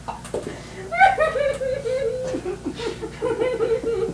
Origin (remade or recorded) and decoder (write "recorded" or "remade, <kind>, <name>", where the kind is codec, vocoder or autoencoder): recorded